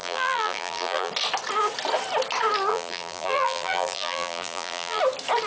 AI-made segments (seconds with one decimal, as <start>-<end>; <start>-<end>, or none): 0.0-1.1; 2.7-5.0